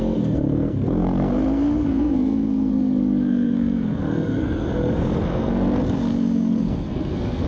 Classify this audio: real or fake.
fake